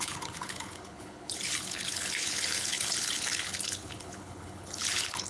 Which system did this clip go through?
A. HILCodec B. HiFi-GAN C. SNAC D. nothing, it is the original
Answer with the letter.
A